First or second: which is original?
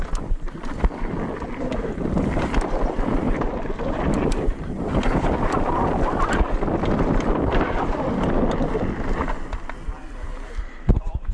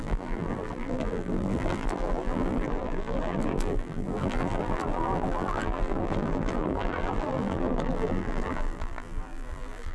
first